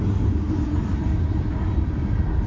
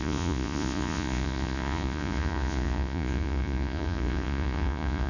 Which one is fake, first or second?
second